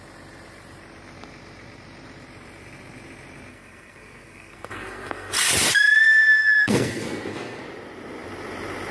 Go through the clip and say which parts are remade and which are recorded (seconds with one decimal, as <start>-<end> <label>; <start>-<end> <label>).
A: 0.0-3.5 recorded; 3.5-5.3 remade; 5.3-6.4 recorded; 6.4-7.6 remade; 7.6-8.9 recorded